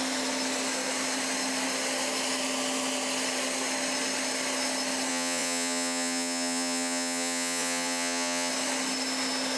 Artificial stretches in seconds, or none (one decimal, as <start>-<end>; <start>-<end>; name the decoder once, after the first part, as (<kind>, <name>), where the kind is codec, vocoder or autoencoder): 5.1-8.5 (vocoder, Vocos)